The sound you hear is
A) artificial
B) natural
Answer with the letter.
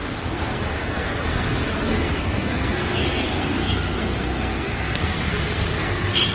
A